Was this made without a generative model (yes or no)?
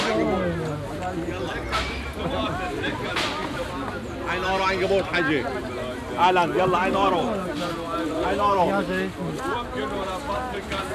yes